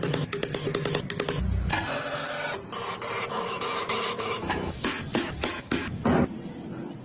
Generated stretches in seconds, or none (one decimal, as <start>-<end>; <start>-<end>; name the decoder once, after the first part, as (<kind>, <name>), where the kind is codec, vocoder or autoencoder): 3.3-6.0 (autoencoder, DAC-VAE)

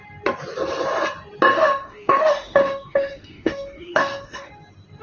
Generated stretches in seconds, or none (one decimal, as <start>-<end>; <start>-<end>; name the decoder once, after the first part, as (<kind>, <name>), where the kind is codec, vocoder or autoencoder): 1.5-4.5 (autoencoder, DAC-VAE)

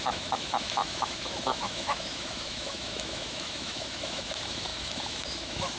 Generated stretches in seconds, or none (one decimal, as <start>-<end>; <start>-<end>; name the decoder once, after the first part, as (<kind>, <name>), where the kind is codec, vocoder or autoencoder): 0.0-5.8 (autoencoder, DAC-VAE)

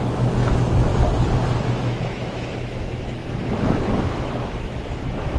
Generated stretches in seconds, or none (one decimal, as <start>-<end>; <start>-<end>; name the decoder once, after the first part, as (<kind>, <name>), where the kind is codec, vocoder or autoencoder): 0.0-0.9 (autoencoder, DAC-VAE); 1.6-5.4

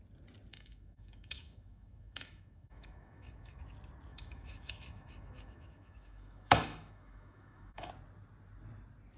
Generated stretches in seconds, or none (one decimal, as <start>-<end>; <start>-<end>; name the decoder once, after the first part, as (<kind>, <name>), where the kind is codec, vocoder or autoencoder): 0.5-3.6 (autoencoder, DAC-VAE); 4.1-7.9

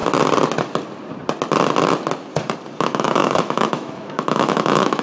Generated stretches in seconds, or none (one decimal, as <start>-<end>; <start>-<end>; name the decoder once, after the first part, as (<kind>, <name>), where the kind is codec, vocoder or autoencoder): 2.8-5.0 (autoencoder, DAC-VAE)